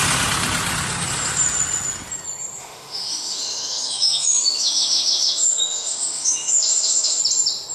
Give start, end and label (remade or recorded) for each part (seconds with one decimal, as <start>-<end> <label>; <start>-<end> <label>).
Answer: 0.0-2.6 recorded; 2.6-7.2 remade; 7.2-7.7 recorded